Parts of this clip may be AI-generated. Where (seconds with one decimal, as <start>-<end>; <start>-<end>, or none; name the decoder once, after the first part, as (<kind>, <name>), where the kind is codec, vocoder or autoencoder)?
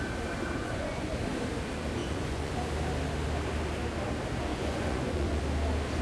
0.6-1.1 (vocoder, Vocos); 2.0-2.5; 4.5-5.4